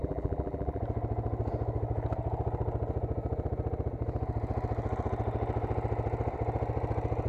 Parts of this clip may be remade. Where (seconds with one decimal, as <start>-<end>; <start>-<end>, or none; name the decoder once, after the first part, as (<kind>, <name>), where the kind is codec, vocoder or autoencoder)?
0.0-0.8 (vocoder, BigVGAN v2)